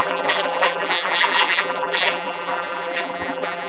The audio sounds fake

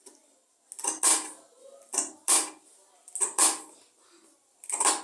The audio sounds real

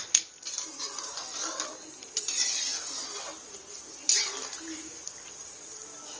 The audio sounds real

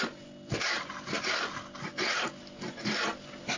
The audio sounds real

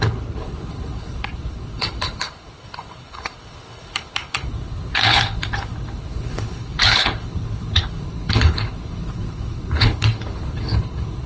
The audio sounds fake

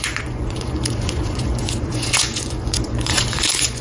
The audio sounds fake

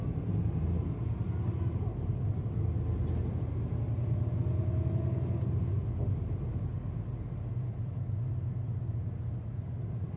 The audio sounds real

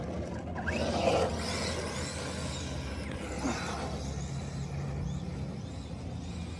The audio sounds real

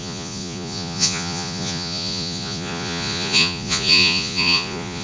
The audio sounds fake